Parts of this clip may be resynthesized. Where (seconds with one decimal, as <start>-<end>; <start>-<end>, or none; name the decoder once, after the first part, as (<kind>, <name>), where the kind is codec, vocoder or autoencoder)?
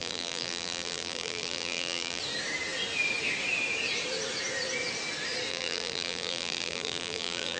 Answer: 0.0-2.2 (vocoder, BigVGAN v2); 5.5-7.6